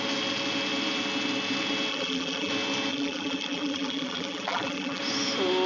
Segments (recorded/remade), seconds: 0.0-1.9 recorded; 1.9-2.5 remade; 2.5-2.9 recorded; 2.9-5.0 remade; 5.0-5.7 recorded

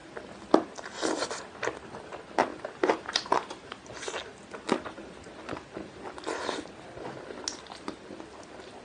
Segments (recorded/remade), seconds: 0.0-2.5 recorded; 2.5-3.9 remade; 3.9-8.8 recorded

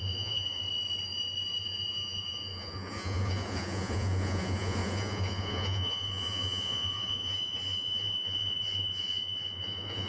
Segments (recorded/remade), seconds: 0.0-0.6 remade; 0.6-1.6 recorded; 1.6-10.1 remade

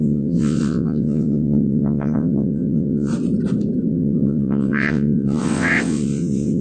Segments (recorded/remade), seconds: 0.0-3.1 remade; 3.1-3.9 recorded; 3.9-6.6 remade

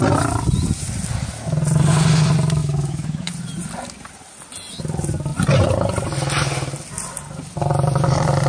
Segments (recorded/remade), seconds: 0.0-2.6 recorded; 2.6-3.3 remade; 3.3-8.5 recorded

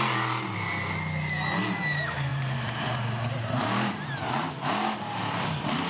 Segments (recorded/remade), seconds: 0.0-2.3 recorded; 2.3-5.9 remade